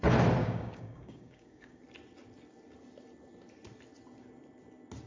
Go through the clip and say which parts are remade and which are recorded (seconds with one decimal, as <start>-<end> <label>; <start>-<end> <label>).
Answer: 0.0-0.4 recorded; 0.4-1.8 remade; 1.8-5.1 recorded